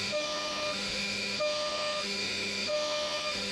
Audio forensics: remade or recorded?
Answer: remade